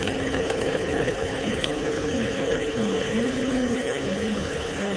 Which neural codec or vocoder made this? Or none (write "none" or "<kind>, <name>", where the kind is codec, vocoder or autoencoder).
codec, HILCodec